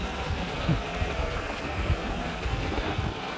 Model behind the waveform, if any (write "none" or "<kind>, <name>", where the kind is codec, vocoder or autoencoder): codec, SNAC